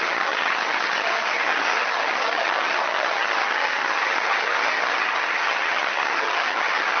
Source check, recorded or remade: remade